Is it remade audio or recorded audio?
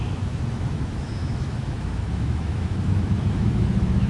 remade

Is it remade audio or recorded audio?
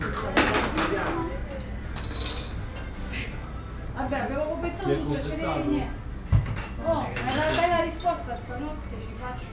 recorded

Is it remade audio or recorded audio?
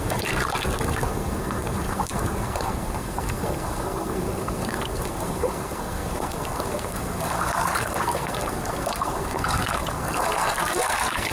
remade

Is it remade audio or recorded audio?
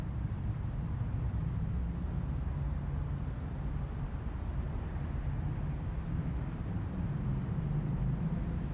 recorded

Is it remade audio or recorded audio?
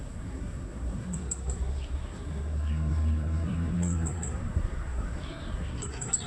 remade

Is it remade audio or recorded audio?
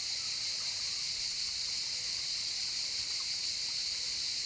remade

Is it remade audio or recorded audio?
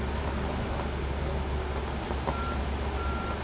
recorded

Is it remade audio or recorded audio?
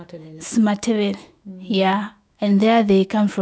remade